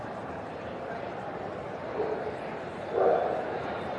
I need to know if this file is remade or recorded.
remade